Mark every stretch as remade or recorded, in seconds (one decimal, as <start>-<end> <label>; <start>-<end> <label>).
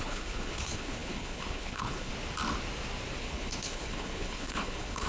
0.0-2.1 remade; 2.1-3.2 recorded; 3.2-5.1 remade